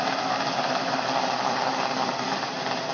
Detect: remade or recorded remade